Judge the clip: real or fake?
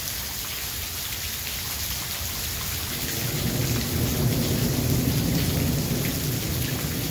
real